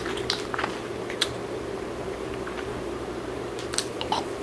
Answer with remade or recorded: remade